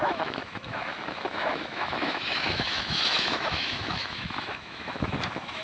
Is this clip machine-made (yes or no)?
yes